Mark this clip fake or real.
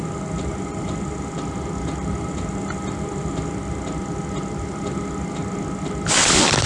real